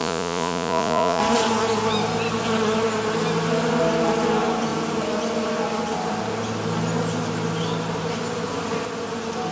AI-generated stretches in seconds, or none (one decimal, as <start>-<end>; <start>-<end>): 0.0-1.2

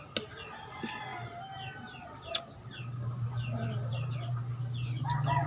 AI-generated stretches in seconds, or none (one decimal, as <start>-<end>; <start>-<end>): none

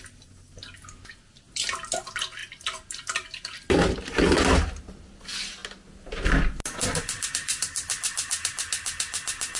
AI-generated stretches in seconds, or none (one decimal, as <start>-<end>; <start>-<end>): none